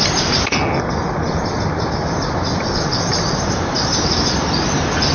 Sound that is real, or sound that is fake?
real